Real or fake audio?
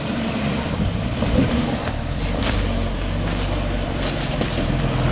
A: fake